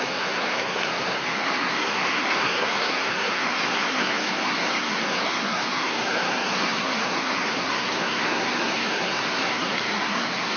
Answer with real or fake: fake